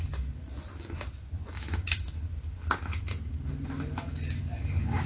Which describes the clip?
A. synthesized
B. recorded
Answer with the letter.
B